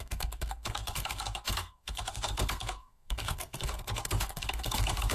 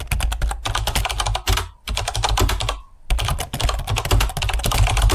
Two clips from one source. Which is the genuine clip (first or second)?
second